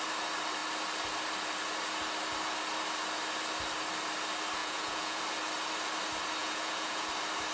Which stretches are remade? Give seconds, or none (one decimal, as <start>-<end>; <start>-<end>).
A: 4.6-5.2; 6.4-7.1